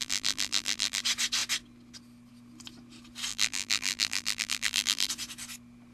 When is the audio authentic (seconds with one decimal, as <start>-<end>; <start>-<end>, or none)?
1.0-3.3; 5.1-5.9